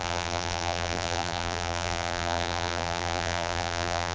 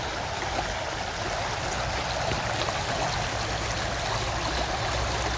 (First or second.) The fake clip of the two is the first